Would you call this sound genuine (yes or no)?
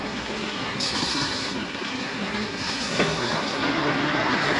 no